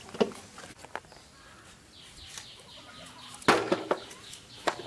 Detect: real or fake real